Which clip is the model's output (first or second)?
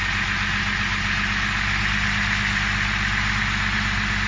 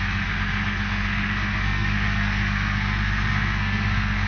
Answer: second